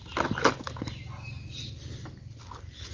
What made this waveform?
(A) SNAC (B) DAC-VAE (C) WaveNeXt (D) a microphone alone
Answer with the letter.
D